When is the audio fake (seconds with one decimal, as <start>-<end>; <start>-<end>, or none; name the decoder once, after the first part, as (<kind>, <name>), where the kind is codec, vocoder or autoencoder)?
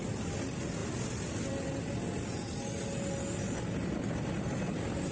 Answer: none